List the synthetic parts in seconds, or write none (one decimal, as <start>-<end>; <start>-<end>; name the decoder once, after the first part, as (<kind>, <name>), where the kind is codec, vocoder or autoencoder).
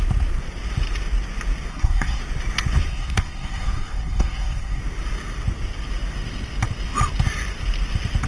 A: 1.7-2.2 (codec, SNAC); 2.9-4.8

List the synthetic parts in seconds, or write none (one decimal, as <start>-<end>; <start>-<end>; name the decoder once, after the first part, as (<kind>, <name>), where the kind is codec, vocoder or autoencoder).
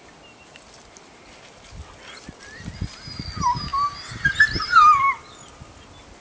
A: none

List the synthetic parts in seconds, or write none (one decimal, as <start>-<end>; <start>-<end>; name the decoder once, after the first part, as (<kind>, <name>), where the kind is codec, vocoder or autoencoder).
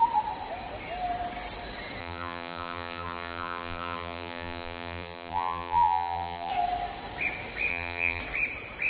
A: 2.0-6.5 (vocoder, BigVGAN v2); 7.7-8.2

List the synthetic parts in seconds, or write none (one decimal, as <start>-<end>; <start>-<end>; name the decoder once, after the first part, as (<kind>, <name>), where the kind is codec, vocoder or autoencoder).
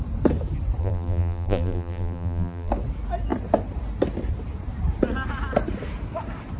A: 0.8-2.7 (vocoder, BigVGAN v2)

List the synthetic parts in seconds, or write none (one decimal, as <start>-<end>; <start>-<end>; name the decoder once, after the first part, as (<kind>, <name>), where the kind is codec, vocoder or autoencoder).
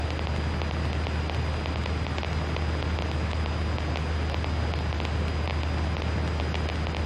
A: none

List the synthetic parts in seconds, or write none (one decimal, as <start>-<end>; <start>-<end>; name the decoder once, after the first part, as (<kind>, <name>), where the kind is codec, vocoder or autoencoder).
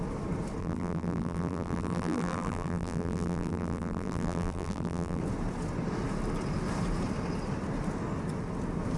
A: 0.6-5.2 (vocoder, BigVGAN v2)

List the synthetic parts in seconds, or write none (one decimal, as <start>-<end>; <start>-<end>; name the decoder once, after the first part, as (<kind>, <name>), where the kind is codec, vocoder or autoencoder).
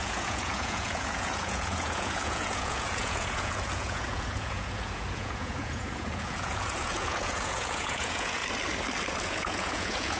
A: 0.0-8.4 (vocoder, Vocos); 9.2-10.2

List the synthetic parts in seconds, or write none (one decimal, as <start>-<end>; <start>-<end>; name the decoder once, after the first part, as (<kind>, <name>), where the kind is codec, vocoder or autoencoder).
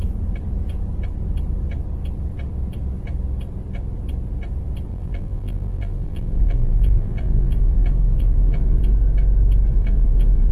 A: 4.9-8.8 (vocoder, BigVGAN v2); 9.7-10.5